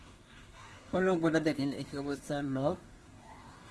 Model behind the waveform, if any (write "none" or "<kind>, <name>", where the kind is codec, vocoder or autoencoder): codec, SNAC